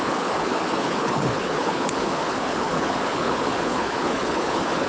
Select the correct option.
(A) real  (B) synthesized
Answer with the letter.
B